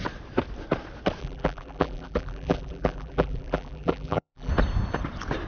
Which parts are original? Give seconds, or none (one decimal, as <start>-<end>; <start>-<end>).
0.0-1.2; 4.5-5.5